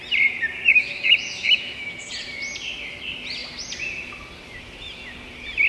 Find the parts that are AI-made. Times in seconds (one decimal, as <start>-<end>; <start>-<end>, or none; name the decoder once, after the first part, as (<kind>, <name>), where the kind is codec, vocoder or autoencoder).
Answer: 0.7-2.1 (autoencoder, DAC-VAE)